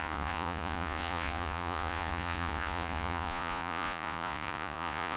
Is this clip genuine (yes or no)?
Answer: no